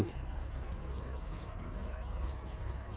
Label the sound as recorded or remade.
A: remade